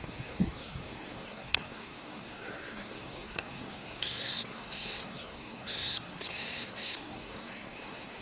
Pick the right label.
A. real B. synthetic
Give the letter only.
B